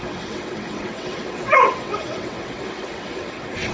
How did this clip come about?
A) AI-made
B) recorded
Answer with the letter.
A